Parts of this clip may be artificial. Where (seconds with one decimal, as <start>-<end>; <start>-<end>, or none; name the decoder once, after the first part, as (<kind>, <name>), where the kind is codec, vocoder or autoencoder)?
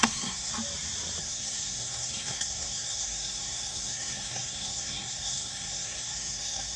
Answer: 0.0-0.5 (codec, SNAC); 1.2-6.8